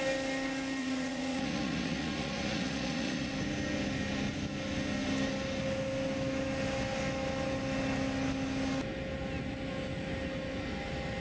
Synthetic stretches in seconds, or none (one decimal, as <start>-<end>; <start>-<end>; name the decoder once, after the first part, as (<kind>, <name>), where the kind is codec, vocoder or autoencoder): 0.8-3.3 (vocoder, Vocos)